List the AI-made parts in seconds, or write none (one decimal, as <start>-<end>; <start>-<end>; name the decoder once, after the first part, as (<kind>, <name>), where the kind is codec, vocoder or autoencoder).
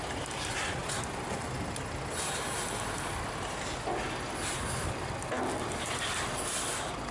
none